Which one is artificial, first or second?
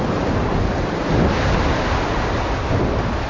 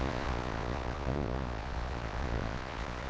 second